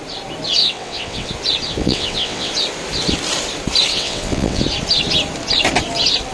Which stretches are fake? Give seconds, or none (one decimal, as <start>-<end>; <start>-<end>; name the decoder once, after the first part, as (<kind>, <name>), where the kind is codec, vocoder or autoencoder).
0.6-1.3 (vocoder, WaveNeXt); 1.8-2.5; 3.9-4.6